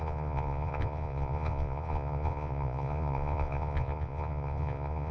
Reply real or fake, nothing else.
fake